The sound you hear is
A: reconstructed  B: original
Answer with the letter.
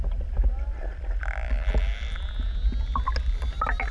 B